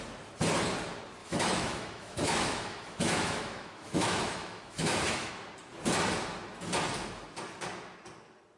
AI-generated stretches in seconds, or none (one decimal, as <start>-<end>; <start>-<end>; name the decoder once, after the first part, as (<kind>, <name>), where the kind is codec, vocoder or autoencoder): 1.2-5.3 (autoencoder, DAC-VAE)